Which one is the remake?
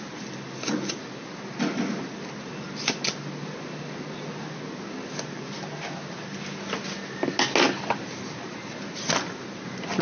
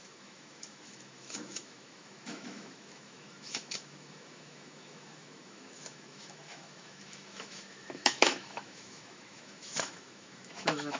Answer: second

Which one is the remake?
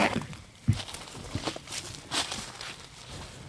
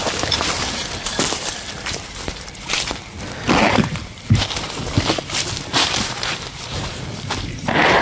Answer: second